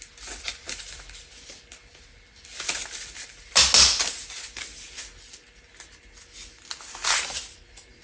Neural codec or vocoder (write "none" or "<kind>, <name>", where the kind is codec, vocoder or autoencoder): none